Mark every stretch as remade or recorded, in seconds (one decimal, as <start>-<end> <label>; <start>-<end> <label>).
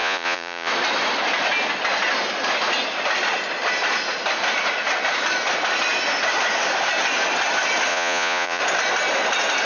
0.0-0.7 remade; 0.7-7.9 recorded; 7.9-8.6 remade; 8.6-9.7 recorded